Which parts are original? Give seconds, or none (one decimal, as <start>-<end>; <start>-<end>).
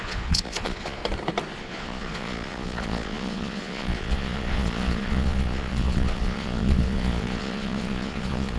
1.0-1.6